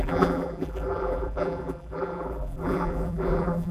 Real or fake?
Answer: fake